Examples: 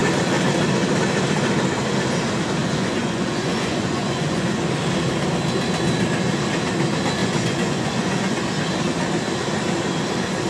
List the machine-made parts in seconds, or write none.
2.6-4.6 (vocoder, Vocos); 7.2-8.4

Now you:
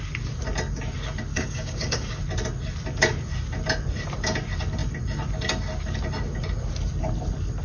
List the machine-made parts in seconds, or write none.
1.3-2.2 (codec, DAC)